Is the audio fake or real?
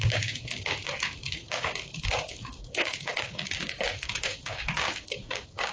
fake